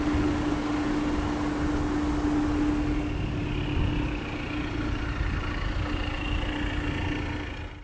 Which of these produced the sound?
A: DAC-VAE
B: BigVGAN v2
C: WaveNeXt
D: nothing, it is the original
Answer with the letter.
D